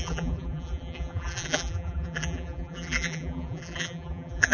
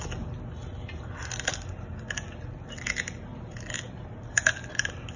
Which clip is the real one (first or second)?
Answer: second